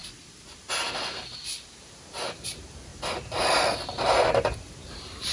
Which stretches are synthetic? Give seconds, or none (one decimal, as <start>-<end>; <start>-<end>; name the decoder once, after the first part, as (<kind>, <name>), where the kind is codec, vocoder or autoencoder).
0.0-2.9 (vocoder, BigVGAN v2); 3.7-5.3